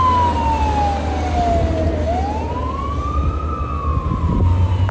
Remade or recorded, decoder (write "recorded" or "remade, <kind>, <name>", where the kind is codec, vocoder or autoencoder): recorded